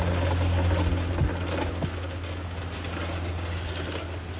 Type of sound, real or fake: real